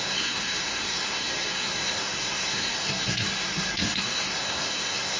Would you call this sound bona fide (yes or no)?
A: no